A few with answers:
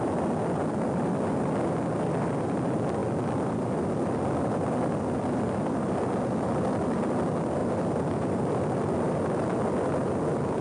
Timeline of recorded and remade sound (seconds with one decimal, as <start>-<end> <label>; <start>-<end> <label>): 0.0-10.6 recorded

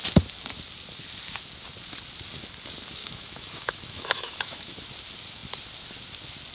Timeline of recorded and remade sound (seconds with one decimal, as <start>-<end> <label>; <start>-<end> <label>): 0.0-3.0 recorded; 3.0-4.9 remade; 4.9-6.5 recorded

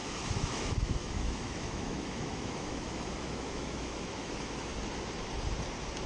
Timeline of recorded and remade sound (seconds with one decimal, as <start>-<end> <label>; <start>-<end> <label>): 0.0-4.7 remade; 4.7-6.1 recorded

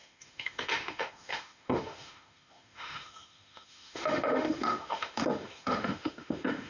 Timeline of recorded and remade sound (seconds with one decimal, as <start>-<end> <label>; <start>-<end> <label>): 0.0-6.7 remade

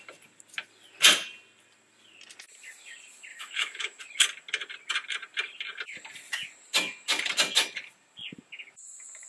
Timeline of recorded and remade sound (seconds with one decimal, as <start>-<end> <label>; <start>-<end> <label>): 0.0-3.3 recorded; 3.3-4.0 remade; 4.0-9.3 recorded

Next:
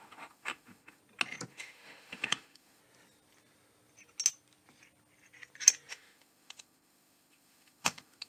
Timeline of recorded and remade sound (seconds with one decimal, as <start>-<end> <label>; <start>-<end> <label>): 0.0-1.0 remade; 1.0-1.5 recorded; 1.5-2.8 remade; 2.8-5.9 recorded; 5.9-8.3 remade